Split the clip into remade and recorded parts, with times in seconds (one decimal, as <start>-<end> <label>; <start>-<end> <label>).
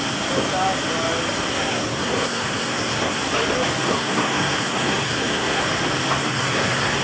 0.0-1.5 recorded; 1.5-3.2 remade; 3.2-3.9 recorded; 3.9-5.6 remade; 5.6-6.2 recorded; 6.2-7.0 remade